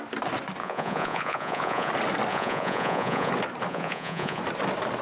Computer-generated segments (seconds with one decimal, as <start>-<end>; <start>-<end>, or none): 0.6-1.9; 2.3-3.3; 3.7-4.4